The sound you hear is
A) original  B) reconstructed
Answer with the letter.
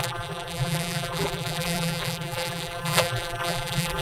B